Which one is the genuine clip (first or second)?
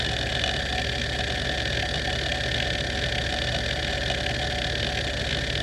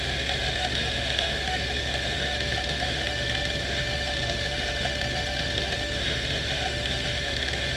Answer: first